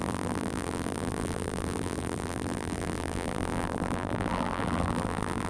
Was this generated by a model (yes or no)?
yes